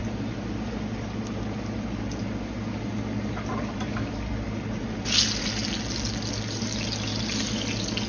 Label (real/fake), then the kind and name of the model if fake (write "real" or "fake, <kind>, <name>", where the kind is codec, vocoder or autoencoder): real